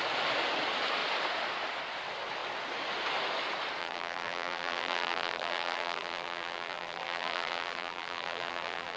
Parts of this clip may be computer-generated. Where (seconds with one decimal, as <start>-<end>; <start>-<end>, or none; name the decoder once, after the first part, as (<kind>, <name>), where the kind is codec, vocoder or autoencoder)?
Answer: 3.8-9.0 (vocoder, BigVGAN v2)